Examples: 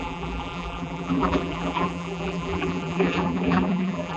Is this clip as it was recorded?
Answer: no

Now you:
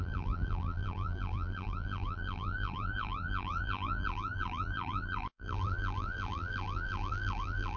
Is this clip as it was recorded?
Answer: no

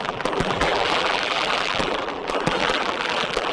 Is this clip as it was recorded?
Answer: no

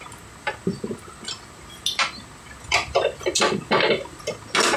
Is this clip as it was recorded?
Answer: yes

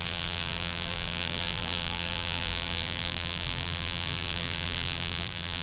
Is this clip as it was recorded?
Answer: no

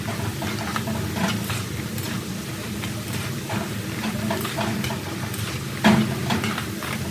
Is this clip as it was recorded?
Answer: no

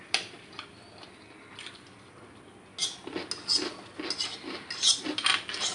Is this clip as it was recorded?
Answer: yes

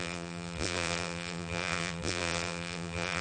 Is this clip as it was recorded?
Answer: no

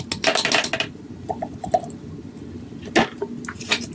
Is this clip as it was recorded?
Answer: yes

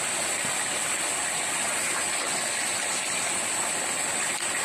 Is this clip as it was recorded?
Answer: yes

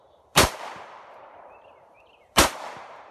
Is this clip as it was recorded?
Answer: no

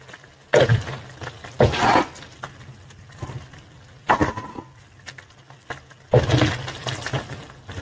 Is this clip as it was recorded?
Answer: yes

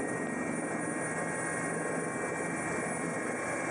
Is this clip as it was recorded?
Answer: yes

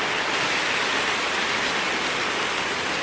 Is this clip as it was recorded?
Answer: yes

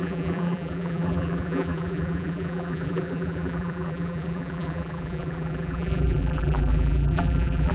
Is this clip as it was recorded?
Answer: no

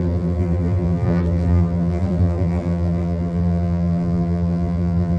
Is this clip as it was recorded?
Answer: no